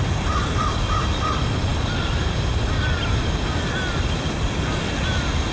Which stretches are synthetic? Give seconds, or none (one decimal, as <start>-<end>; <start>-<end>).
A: none